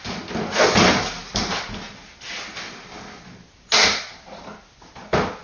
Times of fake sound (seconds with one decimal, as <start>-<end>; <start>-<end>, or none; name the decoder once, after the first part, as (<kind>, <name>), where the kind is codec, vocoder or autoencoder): none